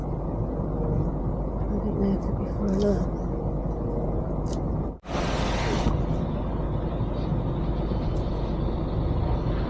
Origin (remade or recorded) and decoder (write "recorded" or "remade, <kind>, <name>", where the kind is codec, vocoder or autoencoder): recorded